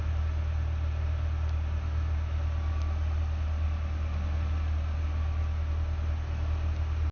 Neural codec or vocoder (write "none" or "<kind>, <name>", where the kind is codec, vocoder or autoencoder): none